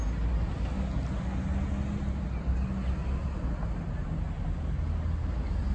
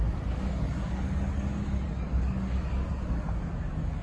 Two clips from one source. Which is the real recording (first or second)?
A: first